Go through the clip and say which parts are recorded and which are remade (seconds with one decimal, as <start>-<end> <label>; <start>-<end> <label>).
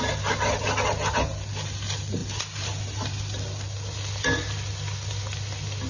0.0-5.9 recorded